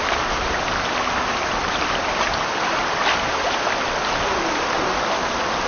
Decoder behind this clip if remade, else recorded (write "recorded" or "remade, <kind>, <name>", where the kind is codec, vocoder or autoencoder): recorded